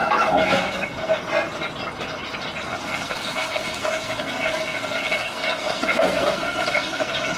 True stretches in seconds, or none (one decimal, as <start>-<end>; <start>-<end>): 1.2-2.7